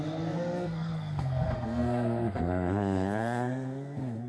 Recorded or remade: remade